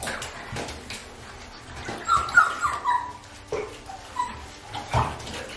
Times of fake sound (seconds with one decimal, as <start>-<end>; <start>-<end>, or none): none